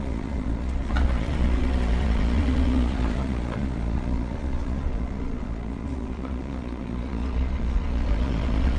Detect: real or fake fake